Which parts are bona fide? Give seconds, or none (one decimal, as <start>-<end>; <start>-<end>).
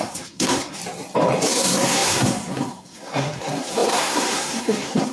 0.8-1.5